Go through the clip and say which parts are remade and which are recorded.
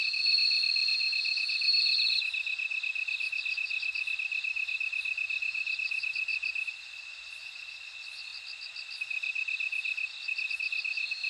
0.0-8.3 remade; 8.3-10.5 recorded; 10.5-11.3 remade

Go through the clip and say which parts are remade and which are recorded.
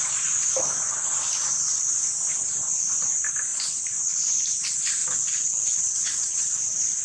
0.0-5.0 recorded; 5.0-7.0 remade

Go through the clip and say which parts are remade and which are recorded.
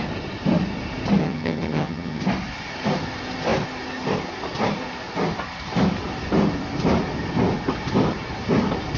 0.0-1.2 recorded; 1.2-2.2 remade; 2.2-9.0 recorded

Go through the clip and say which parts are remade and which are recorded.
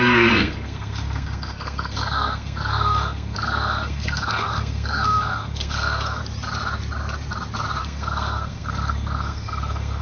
0.0-6.2 remade; 6.2-7.8 recorded; 7.8-10.0 remade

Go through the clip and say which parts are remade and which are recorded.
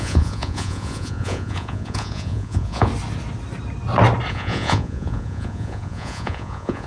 0.0-2.9 remade; 2.9-4.3 recorded; 4.3-6.9 remade